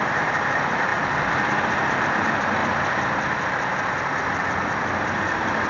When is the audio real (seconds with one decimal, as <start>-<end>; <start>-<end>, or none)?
0.9-2.0